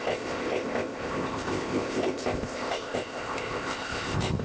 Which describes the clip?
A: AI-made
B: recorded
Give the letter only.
A